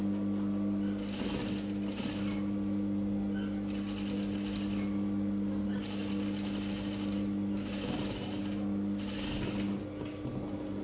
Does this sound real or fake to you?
real